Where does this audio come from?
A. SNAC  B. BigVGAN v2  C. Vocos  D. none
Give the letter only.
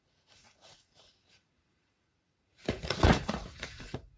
C